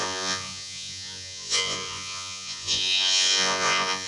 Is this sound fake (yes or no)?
yes